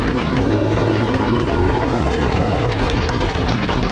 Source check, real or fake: fake